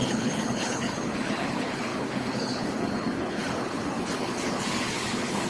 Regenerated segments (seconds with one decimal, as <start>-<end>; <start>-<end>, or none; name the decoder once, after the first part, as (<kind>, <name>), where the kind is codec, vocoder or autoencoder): 0.0-5.5 (codec, HILCodec)